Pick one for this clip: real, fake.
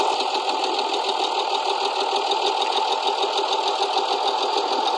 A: real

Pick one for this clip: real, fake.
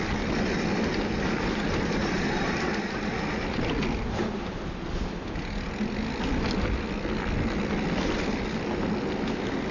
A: real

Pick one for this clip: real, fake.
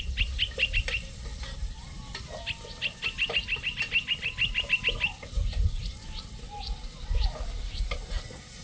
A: real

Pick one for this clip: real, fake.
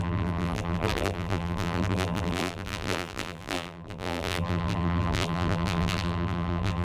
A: fake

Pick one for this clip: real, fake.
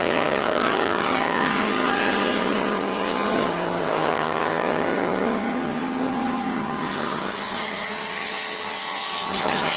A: fake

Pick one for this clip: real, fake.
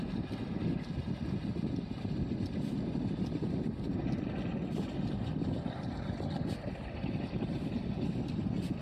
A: real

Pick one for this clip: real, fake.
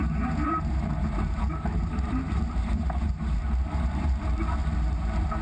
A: fake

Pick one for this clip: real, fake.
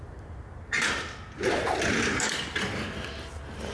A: real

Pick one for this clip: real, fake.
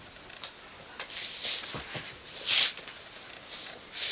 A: real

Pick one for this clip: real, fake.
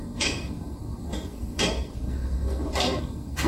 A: fake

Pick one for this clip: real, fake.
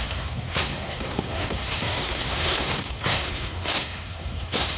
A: fake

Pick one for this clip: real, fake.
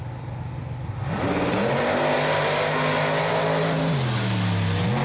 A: real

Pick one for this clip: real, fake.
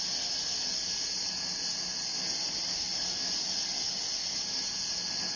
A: real